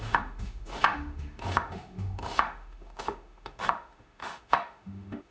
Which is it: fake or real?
fake